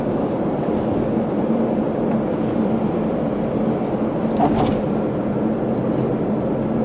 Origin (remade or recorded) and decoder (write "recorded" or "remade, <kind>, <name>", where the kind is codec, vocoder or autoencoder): recorded